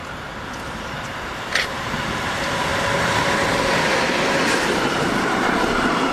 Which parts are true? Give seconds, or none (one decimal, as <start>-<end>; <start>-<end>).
0.0-0.6; 2.7-5.0